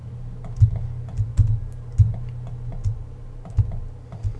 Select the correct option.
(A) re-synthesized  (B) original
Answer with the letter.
B